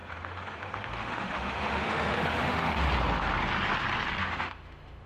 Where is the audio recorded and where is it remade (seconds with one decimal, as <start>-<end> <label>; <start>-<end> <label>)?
0.0-2.8 remade; 2.8-4.2 recorded; 4.2-5.1 remade